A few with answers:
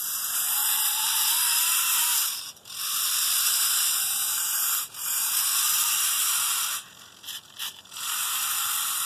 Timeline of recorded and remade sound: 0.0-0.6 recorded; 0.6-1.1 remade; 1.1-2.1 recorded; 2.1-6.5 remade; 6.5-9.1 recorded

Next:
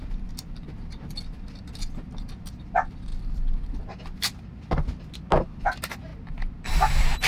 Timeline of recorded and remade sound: 0.0-7.3 recorded

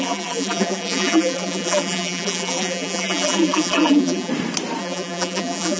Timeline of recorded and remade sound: 0.0-4.3 remade; 4.3-4.8 recorded; 4.8-5.8 remade

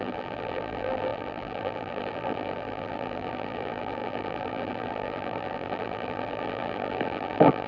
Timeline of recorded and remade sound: 0.0-7.7 remade

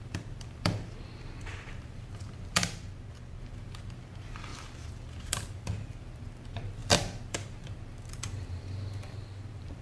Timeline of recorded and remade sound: 0.0-2.6 remade; 2.6-3.4 recorded; 3.4-9.8 remade

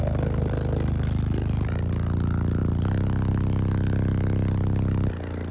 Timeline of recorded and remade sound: 0.0-5.5 recorded